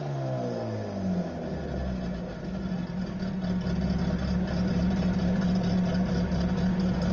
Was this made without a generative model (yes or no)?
yes